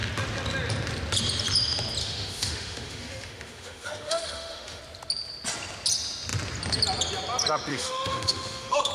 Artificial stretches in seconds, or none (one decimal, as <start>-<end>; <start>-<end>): 2.0-4.8; 7.7-8.9